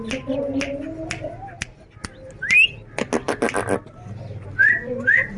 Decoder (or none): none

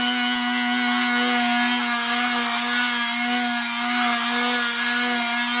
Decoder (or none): none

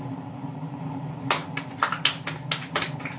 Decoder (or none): none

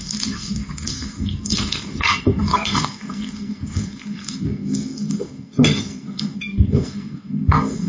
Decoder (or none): codec, SNAC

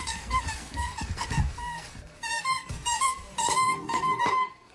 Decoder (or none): codec, SNAC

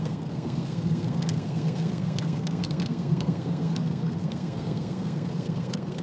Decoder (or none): codec, SNAC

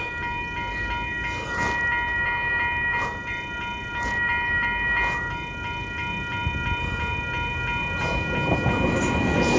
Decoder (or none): none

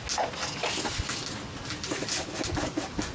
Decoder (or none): none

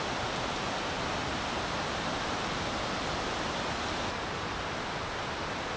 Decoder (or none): none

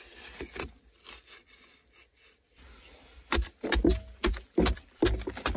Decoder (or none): none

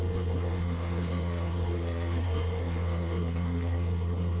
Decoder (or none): codec, SNAC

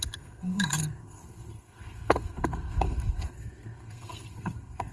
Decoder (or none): codec, SNAC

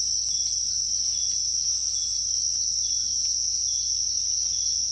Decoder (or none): none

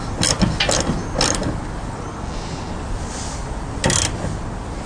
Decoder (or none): none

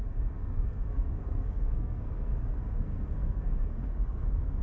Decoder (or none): codec, SNAC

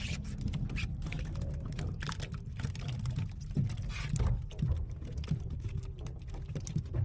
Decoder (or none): none